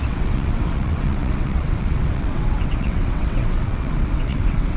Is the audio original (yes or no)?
no